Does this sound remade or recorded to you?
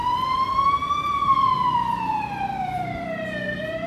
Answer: recorded